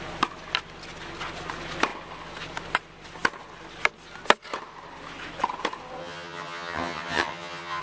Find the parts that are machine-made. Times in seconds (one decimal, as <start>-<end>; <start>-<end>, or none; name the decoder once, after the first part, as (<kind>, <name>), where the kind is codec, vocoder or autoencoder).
6.0-7.8 (vocoder, HiFi-GAN)

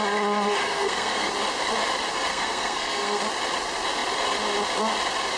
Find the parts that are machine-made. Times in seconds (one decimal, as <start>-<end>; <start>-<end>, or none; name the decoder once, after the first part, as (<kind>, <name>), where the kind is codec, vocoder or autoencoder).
0.6-1.3 (codec, SNAC); 2.3-3.2